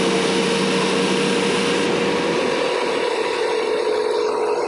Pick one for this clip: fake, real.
real